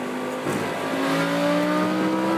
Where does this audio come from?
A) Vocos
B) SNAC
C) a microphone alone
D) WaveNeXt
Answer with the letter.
C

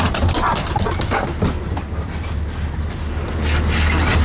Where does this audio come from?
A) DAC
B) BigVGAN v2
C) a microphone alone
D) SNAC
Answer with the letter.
C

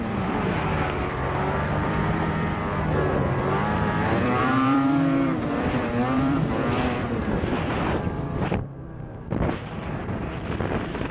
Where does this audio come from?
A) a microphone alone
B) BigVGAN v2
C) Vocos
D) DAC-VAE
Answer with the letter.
B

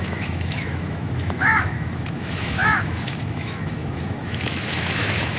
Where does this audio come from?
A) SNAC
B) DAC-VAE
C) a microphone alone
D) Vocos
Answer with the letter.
B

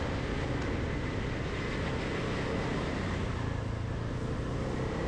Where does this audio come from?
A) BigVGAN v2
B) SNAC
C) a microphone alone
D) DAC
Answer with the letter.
C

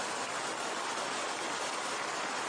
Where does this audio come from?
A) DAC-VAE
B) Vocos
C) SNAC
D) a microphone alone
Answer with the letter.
D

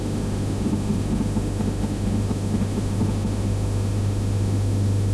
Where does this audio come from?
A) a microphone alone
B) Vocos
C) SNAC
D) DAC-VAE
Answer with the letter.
D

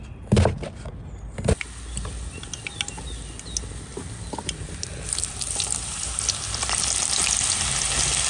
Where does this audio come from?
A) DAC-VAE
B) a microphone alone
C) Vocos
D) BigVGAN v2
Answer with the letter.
B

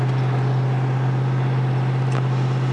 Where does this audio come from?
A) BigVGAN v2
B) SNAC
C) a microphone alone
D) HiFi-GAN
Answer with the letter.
C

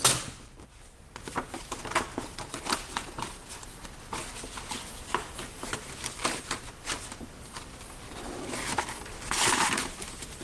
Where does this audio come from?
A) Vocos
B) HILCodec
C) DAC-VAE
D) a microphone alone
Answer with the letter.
D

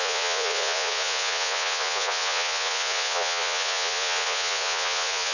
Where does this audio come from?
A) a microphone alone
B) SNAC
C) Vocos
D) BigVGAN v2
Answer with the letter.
C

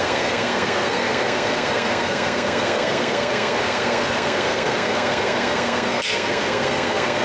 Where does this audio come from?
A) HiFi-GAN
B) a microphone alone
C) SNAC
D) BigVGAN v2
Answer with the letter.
C